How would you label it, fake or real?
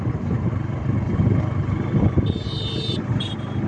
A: fake